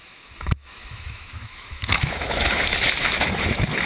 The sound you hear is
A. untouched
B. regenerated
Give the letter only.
B